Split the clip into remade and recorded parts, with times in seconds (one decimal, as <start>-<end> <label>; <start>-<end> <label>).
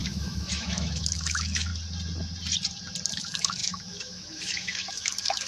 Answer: 0.0-1.7 remade; 1.7-3.1 recorded; 3.1-5.5 remade